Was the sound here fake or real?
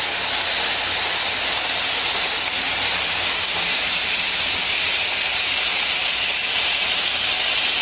real